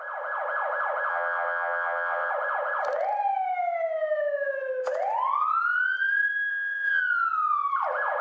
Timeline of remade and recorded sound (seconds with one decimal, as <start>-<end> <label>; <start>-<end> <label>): 0.0-1.1 recorded; 1.1-2.3 remade; 2.3-6.5 recorded; 6.5-7.0 remade; 7.0-8.2 recorded